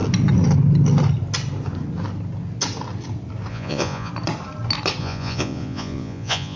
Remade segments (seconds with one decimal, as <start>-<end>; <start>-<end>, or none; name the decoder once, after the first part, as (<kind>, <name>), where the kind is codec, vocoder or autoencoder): 3.5-4.1 (vocoder, Vocos); 5.0-6.6